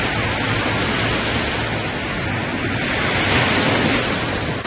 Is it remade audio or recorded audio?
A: recorded